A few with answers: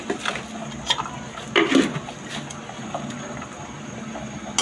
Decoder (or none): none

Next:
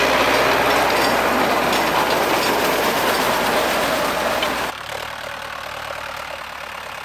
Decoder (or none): none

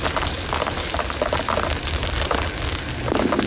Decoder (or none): none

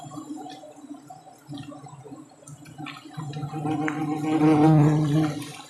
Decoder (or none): none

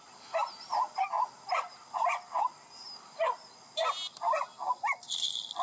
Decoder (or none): none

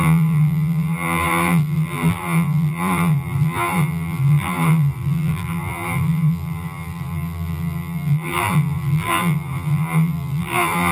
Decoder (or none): vocoder, BigVGAN v2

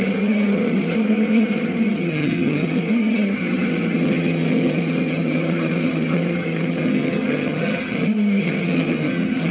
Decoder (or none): vocoder, HiFi-GAN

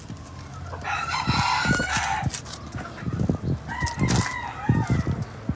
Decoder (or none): none